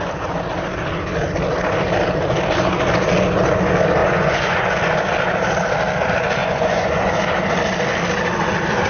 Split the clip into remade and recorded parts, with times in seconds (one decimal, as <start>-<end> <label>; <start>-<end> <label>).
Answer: 0.0-4.0 recorded; 4.0-4.7 remade; 4.7-6.4 recorded; 6.4-7.1 remade; 7.1-8.9 recorded